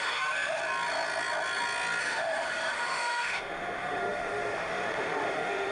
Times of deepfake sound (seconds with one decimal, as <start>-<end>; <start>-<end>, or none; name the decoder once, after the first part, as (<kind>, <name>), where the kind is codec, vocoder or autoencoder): 0.0-0.6 (autoencoder, DAC-VAE); 2.0-5.7